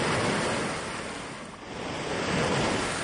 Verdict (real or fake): real